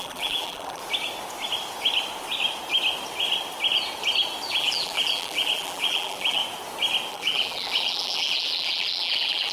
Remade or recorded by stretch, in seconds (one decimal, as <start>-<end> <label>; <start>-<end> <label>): 0.0-0.8 remade; 0.8-4.5 recorded; 4.5-6.4 remade; 6.4-7.1 recorded; 7.1-9.5 remade